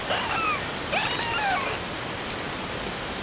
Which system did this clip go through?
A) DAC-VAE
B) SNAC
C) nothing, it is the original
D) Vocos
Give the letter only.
C